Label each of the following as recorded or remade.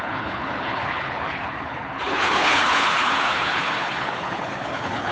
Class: remade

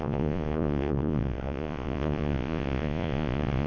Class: remade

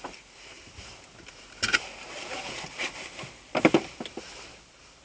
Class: recorded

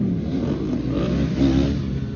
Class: recorded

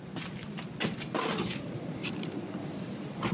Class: recorded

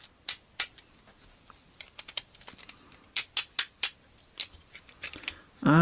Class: recorded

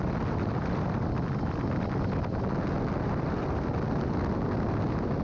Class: recorded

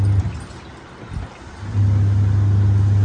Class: recorded